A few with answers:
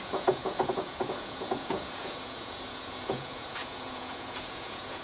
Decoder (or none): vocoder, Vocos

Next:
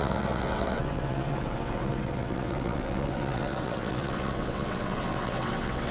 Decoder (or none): vocoder, WaveNeXt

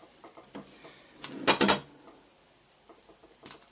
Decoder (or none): none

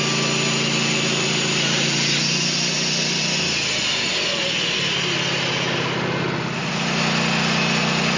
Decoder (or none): none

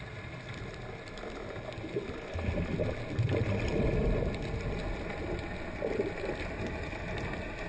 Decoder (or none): none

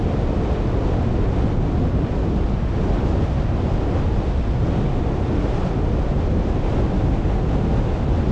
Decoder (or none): none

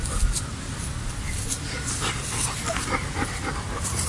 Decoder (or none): none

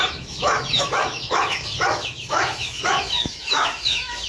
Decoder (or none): autoencoder, DAC-VAE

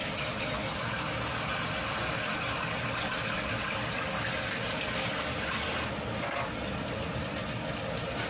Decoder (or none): none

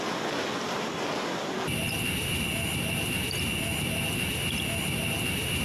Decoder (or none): none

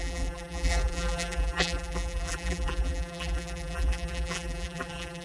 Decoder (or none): vocoder, BigVGAN v2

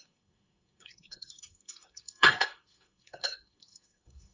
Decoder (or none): codec, SNAC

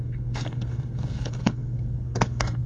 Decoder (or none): codec, SNAC